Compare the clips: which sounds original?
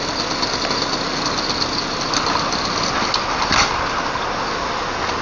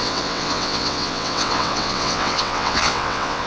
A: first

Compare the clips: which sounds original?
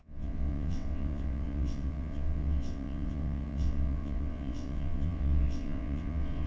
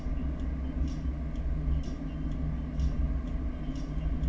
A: second